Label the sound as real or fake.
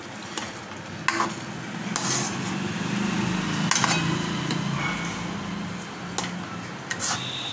real